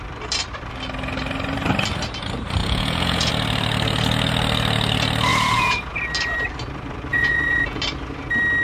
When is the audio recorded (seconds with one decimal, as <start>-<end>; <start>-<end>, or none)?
0.0-2.6; 3.3-5.3; 6.0-7.1; 7.8-8.6